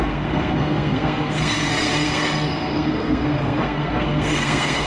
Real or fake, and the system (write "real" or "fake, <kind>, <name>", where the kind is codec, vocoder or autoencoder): fake, codec, SNAC